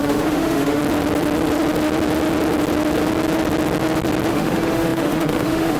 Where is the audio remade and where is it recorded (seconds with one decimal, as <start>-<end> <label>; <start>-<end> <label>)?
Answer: 0.0-0.8 remade; 0.8-4.3 recorded; 4.3-5.8 remade